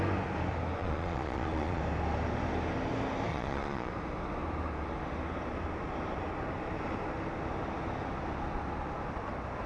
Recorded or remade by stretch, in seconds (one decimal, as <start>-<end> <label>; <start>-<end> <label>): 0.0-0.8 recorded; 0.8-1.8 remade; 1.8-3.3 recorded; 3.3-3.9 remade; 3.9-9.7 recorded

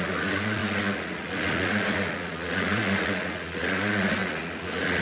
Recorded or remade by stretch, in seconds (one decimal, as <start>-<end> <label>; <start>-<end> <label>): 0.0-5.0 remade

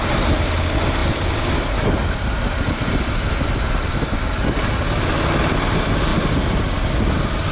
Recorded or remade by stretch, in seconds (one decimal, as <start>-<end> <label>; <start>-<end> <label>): 0.0-7.5 recorded

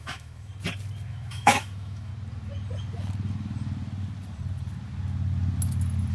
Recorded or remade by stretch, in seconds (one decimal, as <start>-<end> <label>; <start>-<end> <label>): 0.0-0.5 remade; 0.5-1.1 recorded; 1.1-2.1 remade; 2.1-6.1 recorded

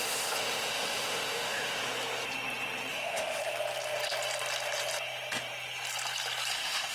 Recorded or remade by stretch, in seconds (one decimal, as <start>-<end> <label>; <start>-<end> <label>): 0.0-1.8 remade; 1.8-2.9 recorded; 2.9-3.4 remade; 3.4-6.5 recorded; 6.5-6.9 remade